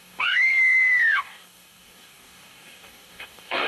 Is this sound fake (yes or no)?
yes